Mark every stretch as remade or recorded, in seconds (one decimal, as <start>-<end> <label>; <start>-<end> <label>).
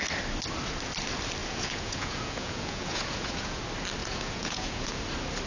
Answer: 0.0-1.4 recorded; 1.4-3.6 remade; 3.6-4.0 recorded; 4.0-5.0 remade; 5.0-5.5 recorded